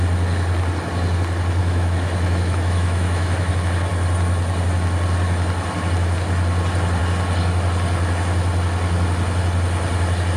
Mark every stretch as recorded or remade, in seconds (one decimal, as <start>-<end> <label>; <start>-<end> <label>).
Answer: 0.0-1.6 recorded; 1.6-3.5 remade; 3.5-10.4 recorded